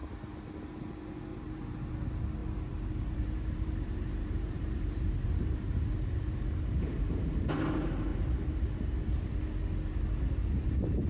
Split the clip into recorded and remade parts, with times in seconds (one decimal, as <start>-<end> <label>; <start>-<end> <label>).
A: 0.0-1.3 recorded; 1.3-1.9 remade; 1.9-2.4 recorded; 2.4-7.4 remade; 7.4-8.1 recorded; 8.1-9.4 remade; 9.4-11.1 recorded